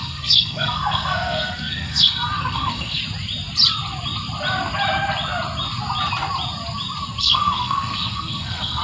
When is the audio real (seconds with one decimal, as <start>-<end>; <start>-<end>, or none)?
3.0-7.2